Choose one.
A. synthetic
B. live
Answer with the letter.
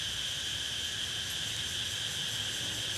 B